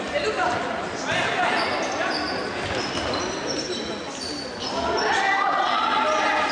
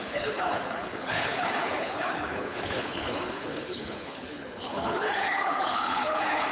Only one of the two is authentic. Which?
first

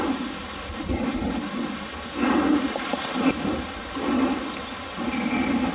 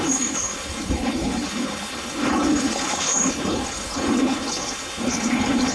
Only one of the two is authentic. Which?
first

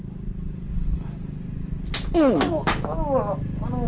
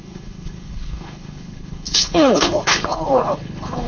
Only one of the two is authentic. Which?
first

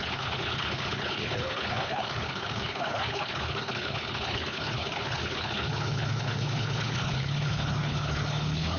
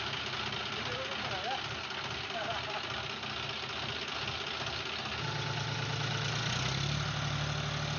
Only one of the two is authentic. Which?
second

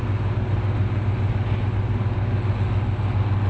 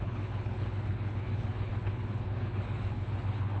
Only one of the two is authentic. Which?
first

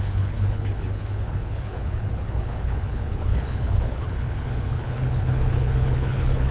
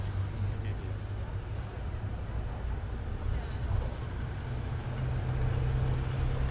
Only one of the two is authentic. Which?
second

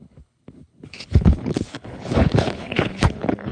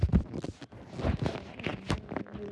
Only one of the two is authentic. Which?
second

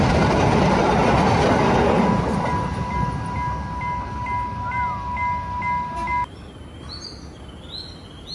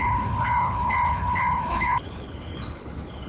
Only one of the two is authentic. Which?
first